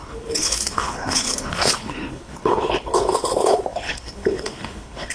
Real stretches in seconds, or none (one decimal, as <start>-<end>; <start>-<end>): none